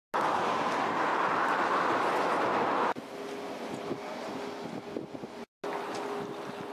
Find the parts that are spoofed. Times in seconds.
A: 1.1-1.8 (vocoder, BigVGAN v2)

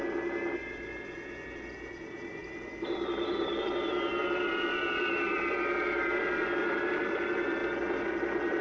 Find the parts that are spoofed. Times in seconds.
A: 0.0-7.6 (vocoder, BigVGAN v2); 8.1-8.6